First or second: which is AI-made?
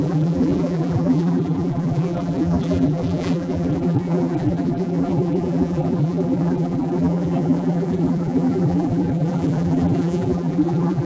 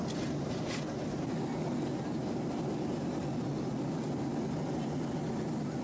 first